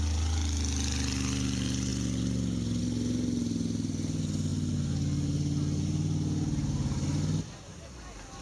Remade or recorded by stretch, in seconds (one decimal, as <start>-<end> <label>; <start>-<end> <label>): 0.0-8.4 recorded